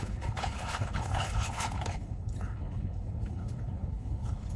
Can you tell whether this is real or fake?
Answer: fake